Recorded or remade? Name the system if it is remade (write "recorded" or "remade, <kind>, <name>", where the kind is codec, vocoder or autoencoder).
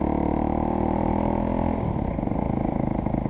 recorded